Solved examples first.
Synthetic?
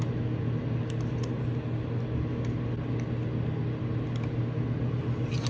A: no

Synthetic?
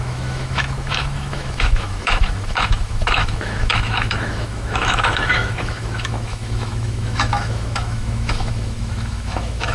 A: yes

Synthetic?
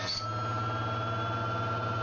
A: no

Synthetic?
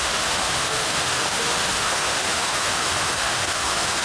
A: yes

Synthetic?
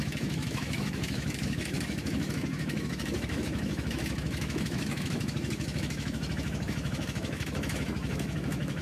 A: yes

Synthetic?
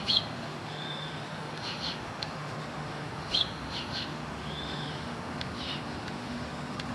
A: yes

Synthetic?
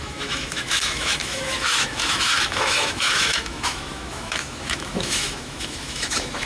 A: yes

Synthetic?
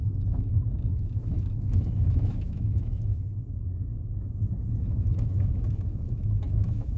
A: yes